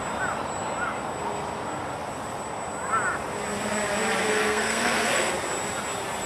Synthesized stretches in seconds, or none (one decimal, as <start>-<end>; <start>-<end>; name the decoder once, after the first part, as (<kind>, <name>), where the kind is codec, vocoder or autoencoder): 4.2-5.3 (codec, SNAC)